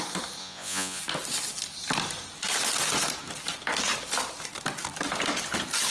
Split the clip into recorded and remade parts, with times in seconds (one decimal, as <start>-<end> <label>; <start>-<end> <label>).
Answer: 0.0-0.4 recorded; 0.4-1.0 remade; 1.0-5.9 recorded